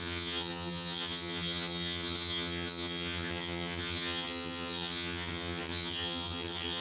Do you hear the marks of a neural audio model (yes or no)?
yes